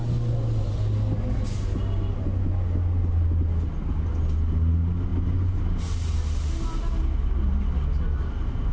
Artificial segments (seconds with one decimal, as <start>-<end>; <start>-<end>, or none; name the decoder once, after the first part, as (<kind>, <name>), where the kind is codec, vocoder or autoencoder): none